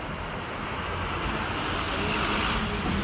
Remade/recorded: recorded